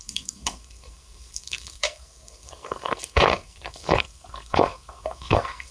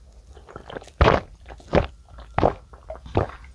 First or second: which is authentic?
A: second